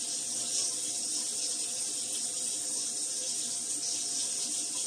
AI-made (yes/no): no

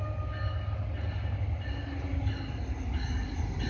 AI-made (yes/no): no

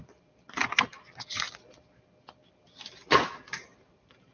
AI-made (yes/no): no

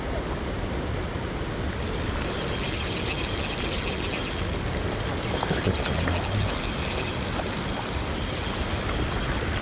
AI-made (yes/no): no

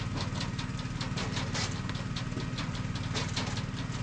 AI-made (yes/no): no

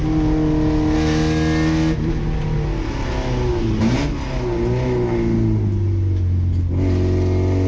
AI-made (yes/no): no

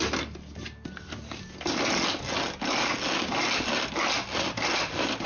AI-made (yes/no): no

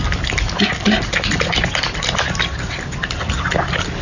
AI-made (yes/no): no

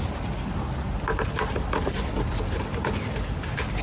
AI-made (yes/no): no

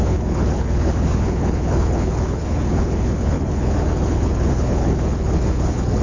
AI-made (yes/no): yes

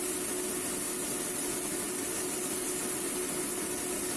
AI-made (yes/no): no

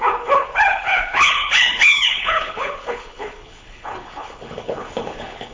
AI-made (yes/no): yes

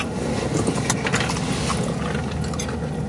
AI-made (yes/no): no